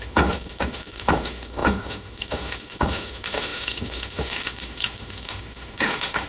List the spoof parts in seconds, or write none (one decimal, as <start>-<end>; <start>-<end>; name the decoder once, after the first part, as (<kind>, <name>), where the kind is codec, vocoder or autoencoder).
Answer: 0.0-6.3 (autoencoder, DAC-VAE)